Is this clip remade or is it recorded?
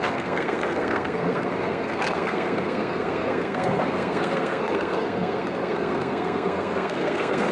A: remade